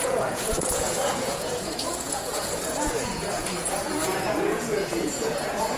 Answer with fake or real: fake